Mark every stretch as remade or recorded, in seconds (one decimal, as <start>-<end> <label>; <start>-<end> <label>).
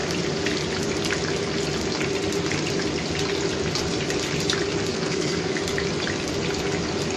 0.0-4.9 recorded; 4.9-5.5 remade; 5.5-7.2 recorded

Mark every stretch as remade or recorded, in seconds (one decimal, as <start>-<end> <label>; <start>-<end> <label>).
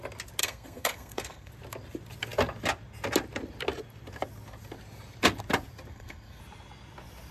0.0-0.4 recorded; 0.4-1.5 remade; 1.5-5.9 recorded; 5.9-6.4 remade; 6.4-7.3 recorded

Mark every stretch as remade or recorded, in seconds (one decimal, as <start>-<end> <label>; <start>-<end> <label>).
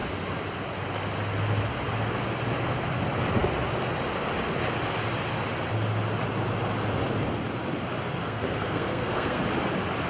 0.0-8.2 recorded; 8.2-9.4 remade; 9.4-10.1 recorded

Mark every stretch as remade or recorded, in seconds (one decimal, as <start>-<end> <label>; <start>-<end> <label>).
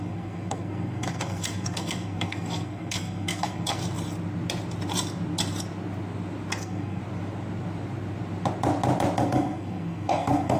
0.0-3.8 remade; 3.8-6.6 recorded; 6.6-7.0 remade; 7.0-9.2 recorded; 9.2-10.6 remade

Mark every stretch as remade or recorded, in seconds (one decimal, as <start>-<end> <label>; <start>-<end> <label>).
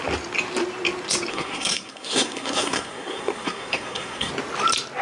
0.0-1.3 recorded; 1.3-4.3 remade; 4.3-5.0 recorded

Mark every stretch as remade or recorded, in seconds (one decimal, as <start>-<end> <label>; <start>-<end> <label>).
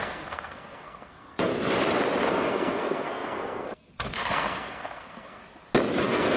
0.0-1.5 remade; 1.5-2.3 recorded; 2.3-5.4 remade; 5.4-6.0 recorded; 6.0-6.4 remade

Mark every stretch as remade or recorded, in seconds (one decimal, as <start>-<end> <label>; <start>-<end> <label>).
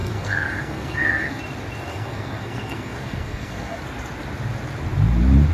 0.0-1.4 remade; 1.4-1.9 recorded; 1.9-3.8 remade; 3.8-5.5 recorded